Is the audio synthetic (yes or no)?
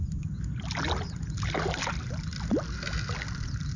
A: no